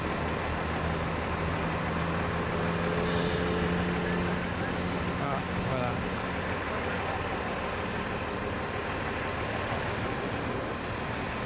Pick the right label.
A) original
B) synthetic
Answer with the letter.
A